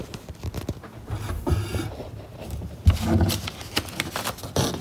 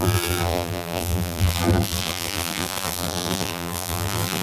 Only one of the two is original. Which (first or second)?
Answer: first